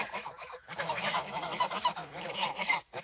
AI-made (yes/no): yes